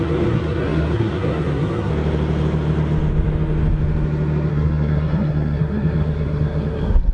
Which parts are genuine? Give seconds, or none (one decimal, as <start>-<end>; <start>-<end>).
1.9-4.5